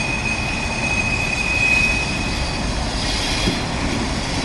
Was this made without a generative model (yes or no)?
yes